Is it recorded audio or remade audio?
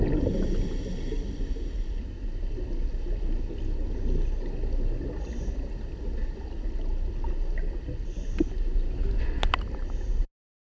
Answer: recorded